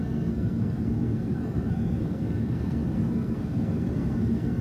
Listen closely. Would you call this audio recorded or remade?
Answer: remade